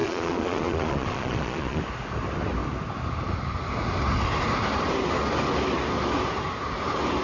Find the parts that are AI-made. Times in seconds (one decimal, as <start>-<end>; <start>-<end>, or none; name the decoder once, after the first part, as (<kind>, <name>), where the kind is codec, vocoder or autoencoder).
0.0-1.8 (vocoder, Vocos)